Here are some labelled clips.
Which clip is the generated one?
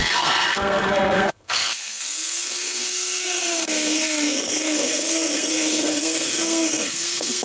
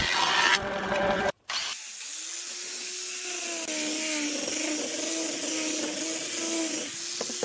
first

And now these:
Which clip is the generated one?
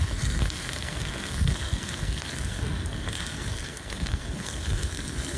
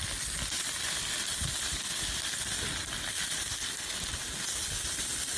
first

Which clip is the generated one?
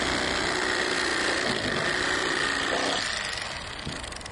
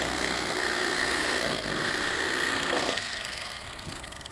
second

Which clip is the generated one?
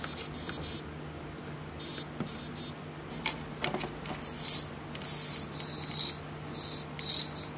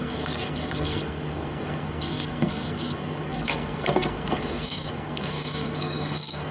second